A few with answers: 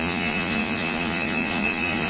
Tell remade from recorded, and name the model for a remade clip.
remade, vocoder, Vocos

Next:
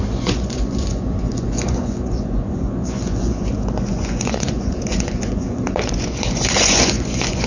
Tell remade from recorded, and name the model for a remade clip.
remade, vocoder, Vocos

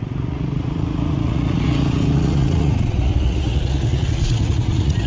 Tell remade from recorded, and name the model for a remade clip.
remade, vocoder, Vocos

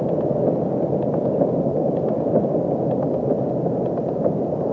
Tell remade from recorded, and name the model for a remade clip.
recorded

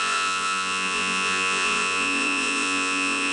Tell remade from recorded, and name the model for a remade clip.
remade, vocoder, Vocos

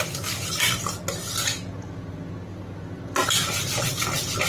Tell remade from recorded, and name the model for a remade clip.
recorded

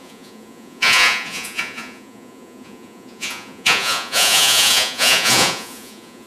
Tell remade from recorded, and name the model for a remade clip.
remade, vocoder, Vocos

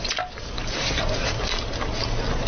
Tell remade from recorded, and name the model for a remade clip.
recorded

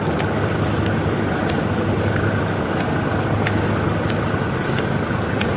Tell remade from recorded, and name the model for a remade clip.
recorded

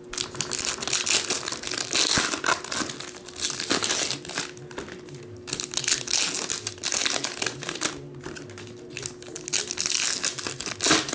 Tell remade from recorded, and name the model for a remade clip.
recorded